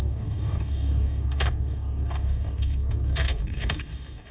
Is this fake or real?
fake